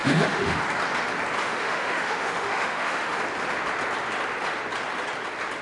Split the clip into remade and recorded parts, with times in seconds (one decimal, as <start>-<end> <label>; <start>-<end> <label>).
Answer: 0.0-0.6 remade; 0.6-1.4 recorded; 1.4-3.2 remade; 3.2-5.6 recorded